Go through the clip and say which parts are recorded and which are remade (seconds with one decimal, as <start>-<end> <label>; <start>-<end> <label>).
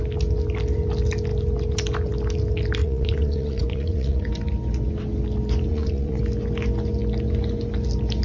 0.0-2.8 recorded; 2.8-4.3 remade; 4.3-5.7 recorded; 5.7-6.2 remade; 6.2-8.2 recorded